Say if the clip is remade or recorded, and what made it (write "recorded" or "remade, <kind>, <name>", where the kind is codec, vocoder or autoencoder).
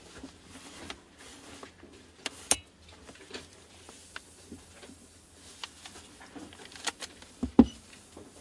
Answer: recorded